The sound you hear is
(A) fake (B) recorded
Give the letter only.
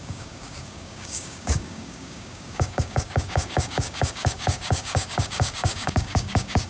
A